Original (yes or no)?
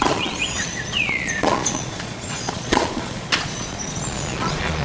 no